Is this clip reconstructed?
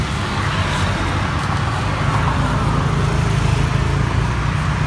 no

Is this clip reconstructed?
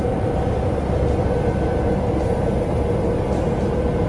no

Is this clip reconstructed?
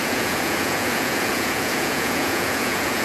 yes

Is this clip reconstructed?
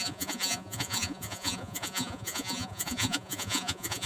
yes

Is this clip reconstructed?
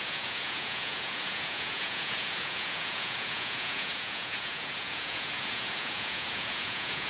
yes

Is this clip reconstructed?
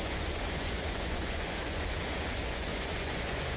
yes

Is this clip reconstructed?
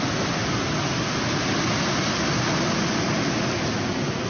no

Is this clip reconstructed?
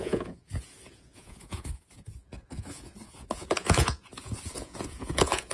yes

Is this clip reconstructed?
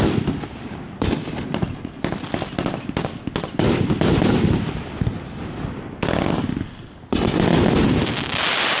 no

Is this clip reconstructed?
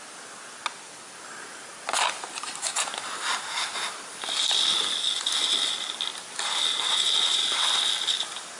no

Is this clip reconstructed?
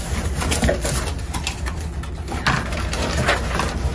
no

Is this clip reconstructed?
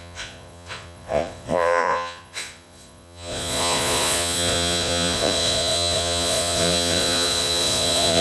yes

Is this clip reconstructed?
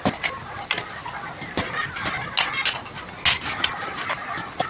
no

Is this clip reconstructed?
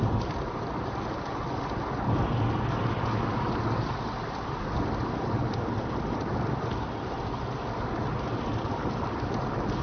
no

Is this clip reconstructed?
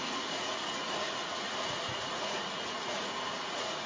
yes